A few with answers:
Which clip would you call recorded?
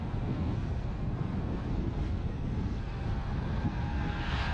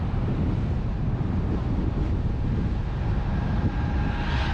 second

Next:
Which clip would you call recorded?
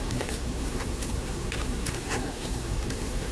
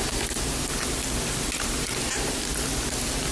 second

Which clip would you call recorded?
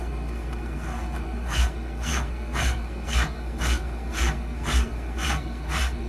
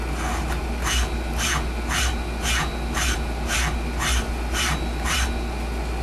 second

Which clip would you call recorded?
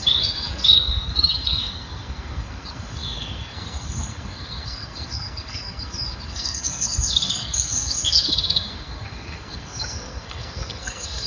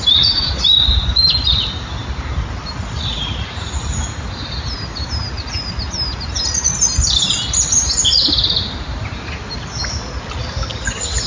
second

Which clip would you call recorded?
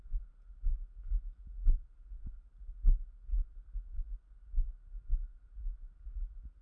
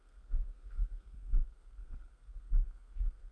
first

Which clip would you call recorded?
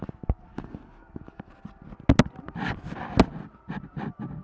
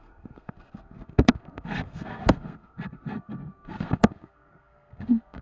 first